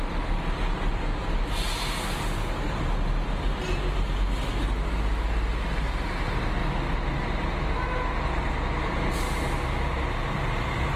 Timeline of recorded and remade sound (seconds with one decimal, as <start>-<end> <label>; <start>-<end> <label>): 0.0-11.0 recorded